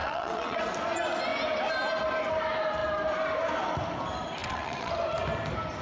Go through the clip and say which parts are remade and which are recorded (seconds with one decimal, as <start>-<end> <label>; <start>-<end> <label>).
0.0-0.6 remade; 0.6-4.4 recorded; 4.4-4.9 remade; 4.9-5.8 recorded